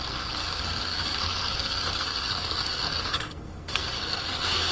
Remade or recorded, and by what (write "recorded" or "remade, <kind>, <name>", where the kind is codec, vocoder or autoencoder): remade, codec, SNAC